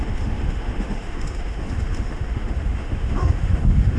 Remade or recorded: remade